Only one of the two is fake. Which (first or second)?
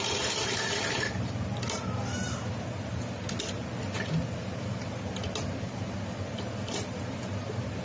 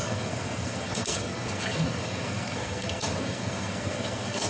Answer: second